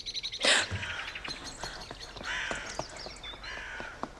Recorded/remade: recorded